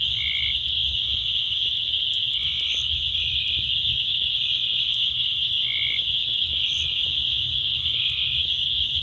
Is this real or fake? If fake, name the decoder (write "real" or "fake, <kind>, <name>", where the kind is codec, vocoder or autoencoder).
real